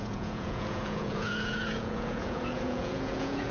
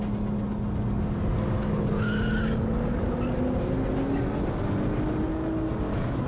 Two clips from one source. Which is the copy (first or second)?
first